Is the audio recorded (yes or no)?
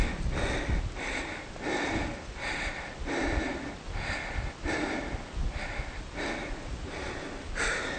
yes